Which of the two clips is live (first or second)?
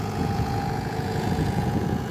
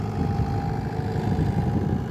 second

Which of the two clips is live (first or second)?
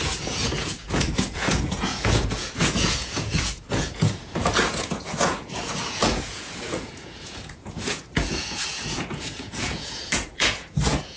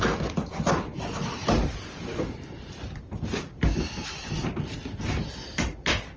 second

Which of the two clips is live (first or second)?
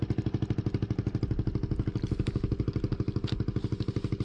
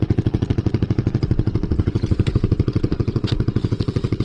first